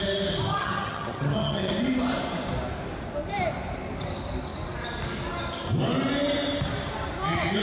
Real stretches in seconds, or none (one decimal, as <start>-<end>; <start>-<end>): 0.0-0.5; 1.7-7.6